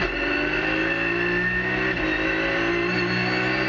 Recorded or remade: recorded